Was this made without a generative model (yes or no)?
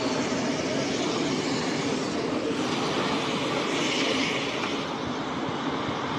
no